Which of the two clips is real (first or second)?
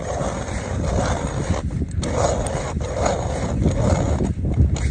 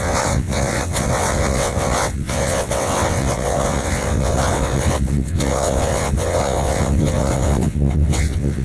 first